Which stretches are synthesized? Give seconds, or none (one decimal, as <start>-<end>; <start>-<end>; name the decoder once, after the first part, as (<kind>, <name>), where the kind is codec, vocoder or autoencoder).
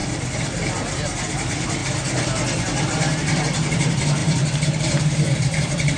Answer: 0.9-1.8 (vocoder, BigVGAN v2); 2.9-6.0